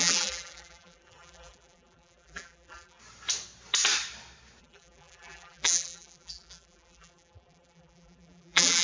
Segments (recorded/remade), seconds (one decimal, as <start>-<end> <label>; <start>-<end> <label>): 0.0-3.0 remade; 3.0-4.6 recorded; 4.6-8.8 remade